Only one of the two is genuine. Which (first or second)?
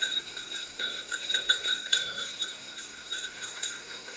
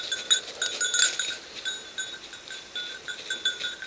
second